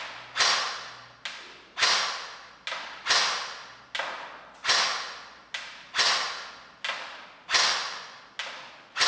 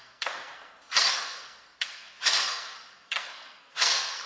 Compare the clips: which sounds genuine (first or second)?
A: first